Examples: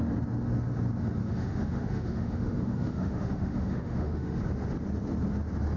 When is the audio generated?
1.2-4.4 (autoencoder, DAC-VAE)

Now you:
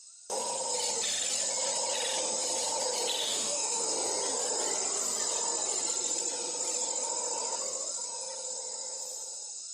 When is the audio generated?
3.2-3.8 (autoencoder, DAC-VAE)

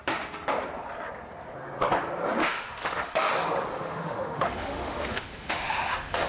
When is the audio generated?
2.4-3.3 (autoencoder, DAC-VAE); 3.8-6.3

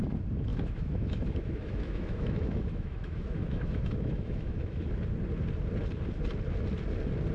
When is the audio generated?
0.5-4.9 (autoencoder, DAC-VAE)

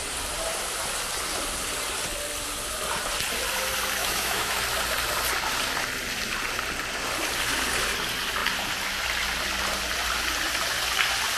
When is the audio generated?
4.0-4.6 (autoencoder, DAC-VAE)